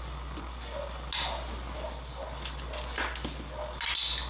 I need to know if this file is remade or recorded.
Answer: recorded